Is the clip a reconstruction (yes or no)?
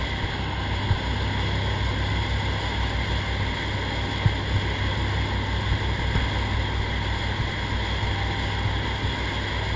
no